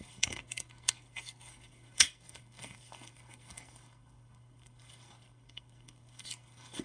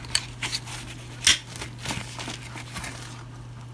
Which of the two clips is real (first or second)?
second